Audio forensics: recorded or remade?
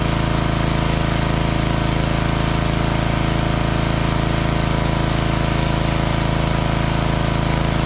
recorded